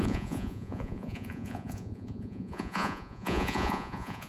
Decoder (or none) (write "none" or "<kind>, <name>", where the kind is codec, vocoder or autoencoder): vocoder, Vocos